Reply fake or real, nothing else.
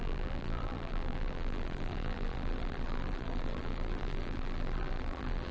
fake